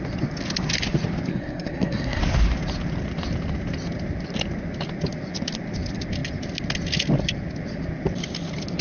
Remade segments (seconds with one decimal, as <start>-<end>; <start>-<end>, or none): 1.3-2.2